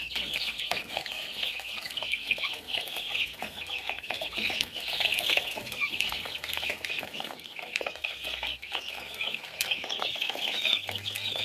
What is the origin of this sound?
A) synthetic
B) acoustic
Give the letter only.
A